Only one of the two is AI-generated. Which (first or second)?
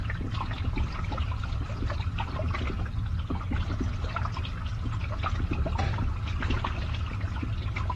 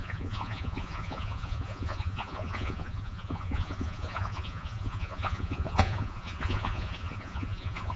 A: second